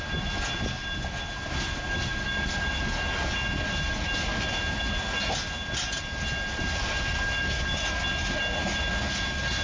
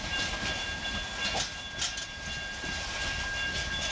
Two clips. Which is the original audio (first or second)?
first